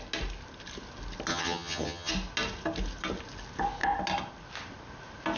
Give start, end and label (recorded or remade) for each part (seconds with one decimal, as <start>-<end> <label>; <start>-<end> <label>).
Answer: 0.0-1.3 recorded; 1.3-2.1 remade; 2.1-5.4 recorded